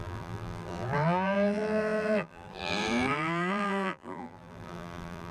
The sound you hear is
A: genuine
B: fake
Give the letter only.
B